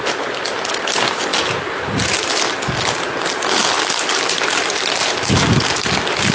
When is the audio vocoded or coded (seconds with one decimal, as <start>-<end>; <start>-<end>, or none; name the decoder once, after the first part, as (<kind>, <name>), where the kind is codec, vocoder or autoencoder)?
none